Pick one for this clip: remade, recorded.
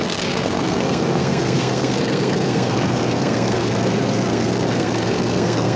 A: remade